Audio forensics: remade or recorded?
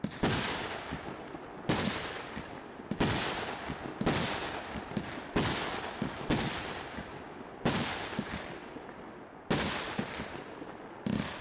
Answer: recorded